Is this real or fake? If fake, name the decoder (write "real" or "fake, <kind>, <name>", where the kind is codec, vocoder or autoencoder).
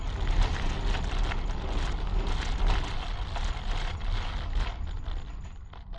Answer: real